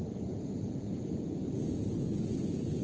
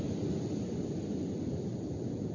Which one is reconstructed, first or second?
first